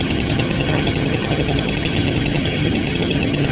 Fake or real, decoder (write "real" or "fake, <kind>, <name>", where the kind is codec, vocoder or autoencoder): fake, vocoder, HiFi-GAN